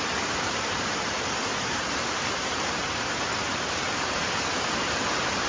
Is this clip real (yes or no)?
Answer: no